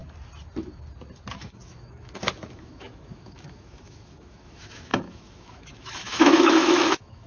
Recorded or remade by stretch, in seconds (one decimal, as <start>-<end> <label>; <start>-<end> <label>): 0.0-1.4 recorded; 1.4-7.3 remade